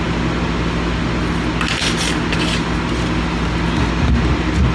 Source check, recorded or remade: recorded